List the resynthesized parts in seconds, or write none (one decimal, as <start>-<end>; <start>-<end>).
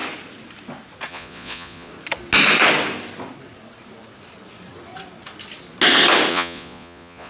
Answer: 1.1-1.9; 6.3-7.3